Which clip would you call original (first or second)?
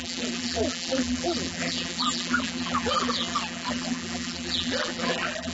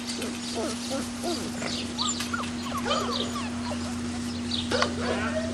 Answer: second